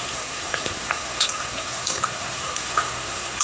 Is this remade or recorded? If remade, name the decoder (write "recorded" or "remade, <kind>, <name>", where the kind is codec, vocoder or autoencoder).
remade, codec, SNAC